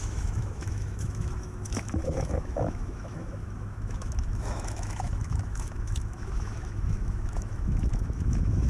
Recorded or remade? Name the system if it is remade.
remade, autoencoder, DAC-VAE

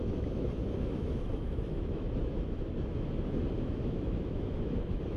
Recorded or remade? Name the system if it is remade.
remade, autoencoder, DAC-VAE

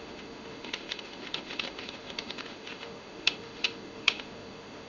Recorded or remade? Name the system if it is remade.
remade, autoencoder, DAC-VAE